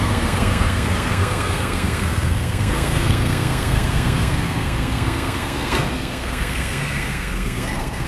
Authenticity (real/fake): fake